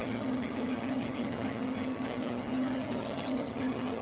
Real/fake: fake